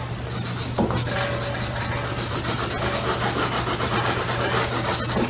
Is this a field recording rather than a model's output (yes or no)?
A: yes